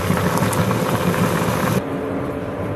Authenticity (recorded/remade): recorded